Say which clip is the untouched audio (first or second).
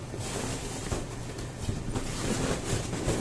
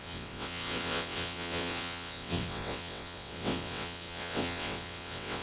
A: first